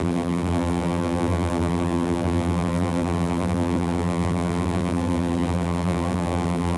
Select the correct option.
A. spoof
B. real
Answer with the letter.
A